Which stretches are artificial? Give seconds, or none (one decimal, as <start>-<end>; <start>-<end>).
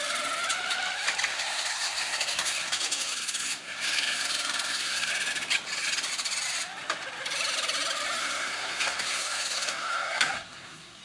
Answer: 1.3-5.1; 8.2-11.0